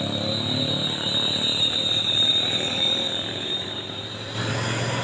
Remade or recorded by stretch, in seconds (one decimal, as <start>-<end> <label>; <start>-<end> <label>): 0.0-1.5 recorded; 1.5-4.5 remade; 4.5-5.0 recorded